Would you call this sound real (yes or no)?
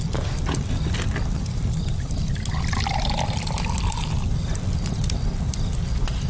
yes